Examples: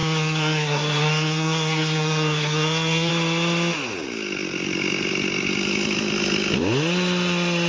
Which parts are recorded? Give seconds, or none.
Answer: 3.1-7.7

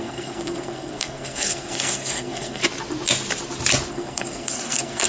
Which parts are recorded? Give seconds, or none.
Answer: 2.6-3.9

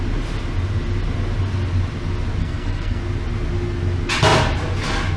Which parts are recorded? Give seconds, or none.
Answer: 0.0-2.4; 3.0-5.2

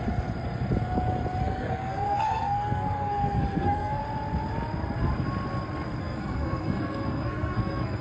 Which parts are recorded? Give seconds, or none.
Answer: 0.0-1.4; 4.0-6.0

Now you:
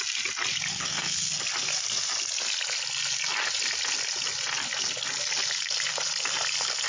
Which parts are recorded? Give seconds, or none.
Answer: 0.0-0.7; 1.3-6.9

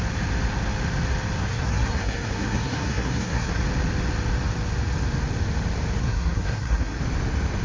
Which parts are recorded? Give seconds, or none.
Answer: 0.0-1.4; 3.6-6.0; 7.0-7.6